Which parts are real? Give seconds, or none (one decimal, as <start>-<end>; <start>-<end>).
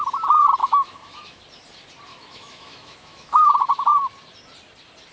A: 0.0-0.6; 1.4-2.1; 3.5-5.1